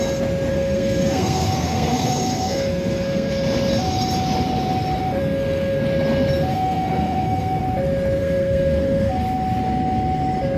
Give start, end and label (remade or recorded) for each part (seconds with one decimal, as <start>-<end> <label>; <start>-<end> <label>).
0.0-0.5 recorded; 0.5-3.3 remade; 3.3-5.2 recorded; 5.2-5.8 remade; 5.8-6.5 recorded; 6.5-7.6 remade; 7.6-8.2 recorded; 8.2-9.1 remade; 9.1-10.6 recorded